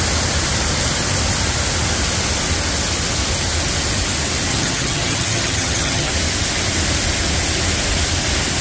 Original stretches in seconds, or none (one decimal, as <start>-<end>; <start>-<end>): 0.0-4.5; 6.1-8.6